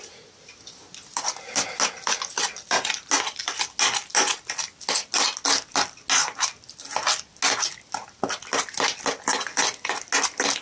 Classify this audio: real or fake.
real